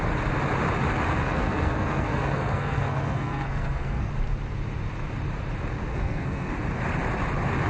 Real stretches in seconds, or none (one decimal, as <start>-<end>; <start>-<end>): 0.0-1.2; 4.1-5.9; 6.5-7.7